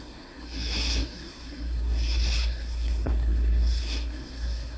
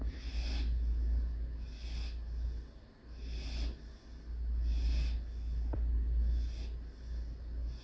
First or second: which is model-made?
first